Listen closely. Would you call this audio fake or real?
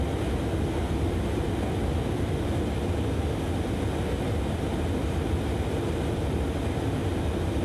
real